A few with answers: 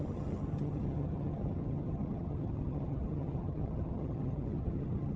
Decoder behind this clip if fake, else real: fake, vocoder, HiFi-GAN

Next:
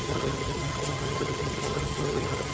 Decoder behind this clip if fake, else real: fake, vocoder, HiFi-GAN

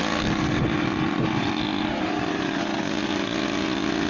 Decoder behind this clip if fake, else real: real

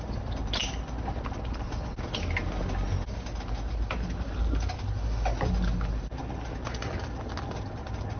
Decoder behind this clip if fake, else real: real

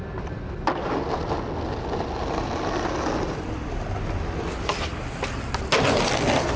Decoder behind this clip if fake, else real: real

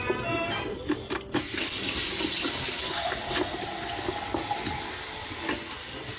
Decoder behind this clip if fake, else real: real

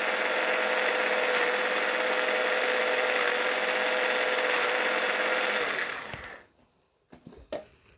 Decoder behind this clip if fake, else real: real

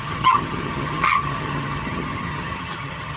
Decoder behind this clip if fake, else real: fake, vocoder, HiFi-GAN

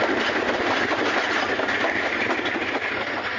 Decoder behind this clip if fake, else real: real